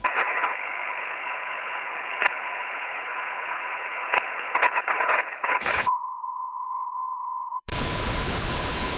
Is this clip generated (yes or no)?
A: yes